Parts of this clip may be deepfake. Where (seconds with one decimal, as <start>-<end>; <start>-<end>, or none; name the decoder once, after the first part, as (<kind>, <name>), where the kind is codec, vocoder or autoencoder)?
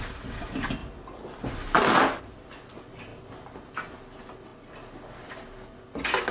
none